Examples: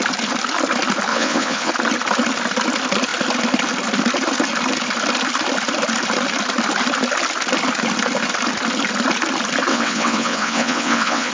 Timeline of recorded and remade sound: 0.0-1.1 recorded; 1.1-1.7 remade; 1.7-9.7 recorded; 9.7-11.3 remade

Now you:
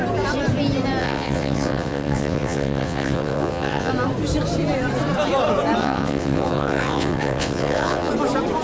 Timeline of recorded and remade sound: 0.0-1.0 recorded; 1.0-3.9 remade; 3.9-5.8 recorded; 5.8-8.1 remade; 8.1-8.6 recorded

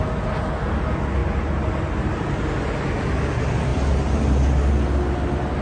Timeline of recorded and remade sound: 0.0-5.6 recorded

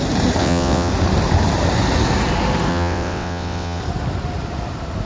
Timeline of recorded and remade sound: 0.0-0.4 recorded; 0.4-0.9 remade; 0.9-2.7 recorded; 2.7-3.8 remade; 3.8-5.1 recorded

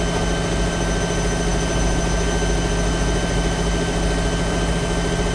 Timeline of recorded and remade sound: 0.0-5.3 recorded

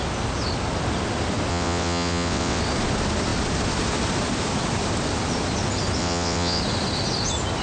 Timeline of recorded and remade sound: 0.0-1.5 recorded; 1.5-2.6 remade; 2.6-6.0 recorded; 6.0-6.6 remade; 6.6-7.6 recorded

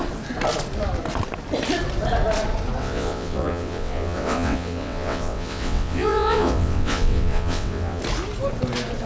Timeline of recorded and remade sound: 0.0-2.8 recorded; 2.8-8.0 remade; 8.0-9.1 recorded